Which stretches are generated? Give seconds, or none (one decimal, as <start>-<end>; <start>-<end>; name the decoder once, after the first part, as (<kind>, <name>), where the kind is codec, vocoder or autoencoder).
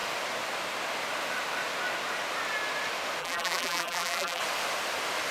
3.2-4.4 (vocoder, BigVGAN v2)